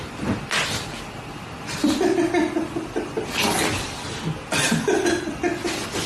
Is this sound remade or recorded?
recorded